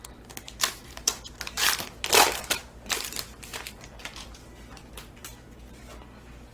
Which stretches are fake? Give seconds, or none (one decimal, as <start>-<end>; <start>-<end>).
0.0-5.2